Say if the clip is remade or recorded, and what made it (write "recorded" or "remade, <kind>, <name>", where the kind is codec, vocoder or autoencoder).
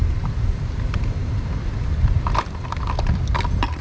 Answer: recorded